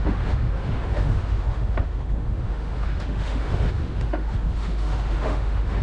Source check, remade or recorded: remade